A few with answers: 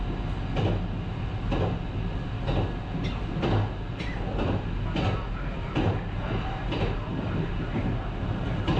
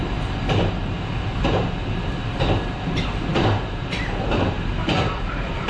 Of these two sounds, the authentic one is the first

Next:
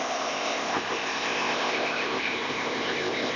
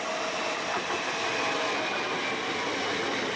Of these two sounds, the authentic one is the second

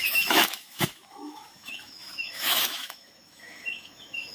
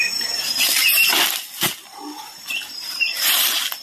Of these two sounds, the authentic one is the second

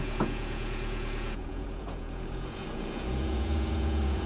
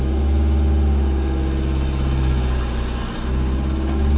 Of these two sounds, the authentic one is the second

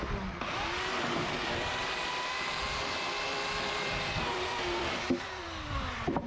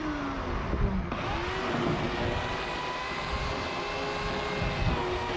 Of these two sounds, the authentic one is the second